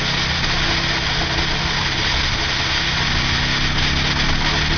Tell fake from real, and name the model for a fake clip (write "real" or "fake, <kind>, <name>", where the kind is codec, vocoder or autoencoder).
real